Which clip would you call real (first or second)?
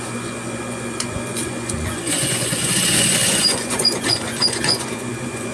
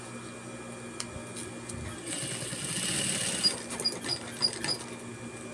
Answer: second